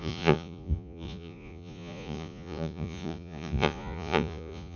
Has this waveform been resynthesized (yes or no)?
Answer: yes